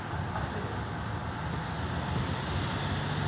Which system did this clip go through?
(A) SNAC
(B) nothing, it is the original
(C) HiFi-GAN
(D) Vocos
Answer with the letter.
B